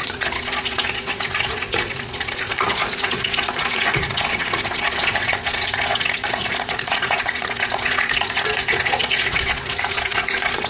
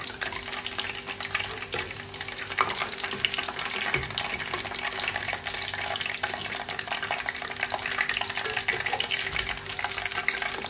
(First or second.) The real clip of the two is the second